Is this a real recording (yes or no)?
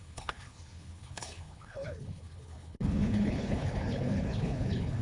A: no